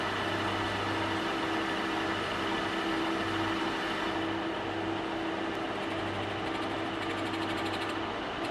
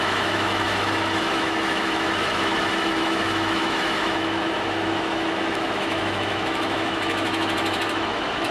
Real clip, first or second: first